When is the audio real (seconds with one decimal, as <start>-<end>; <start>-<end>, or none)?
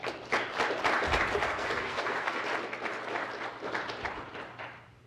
0.0-1.4; 2.4-5.1